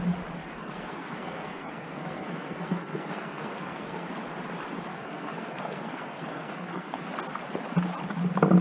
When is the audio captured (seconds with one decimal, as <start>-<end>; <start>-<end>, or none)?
0.0-0.4; 4.1-4.9; 7.1-8.6